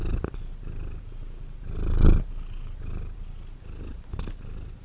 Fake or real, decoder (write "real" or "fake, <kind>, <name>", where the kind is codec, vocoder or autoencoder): real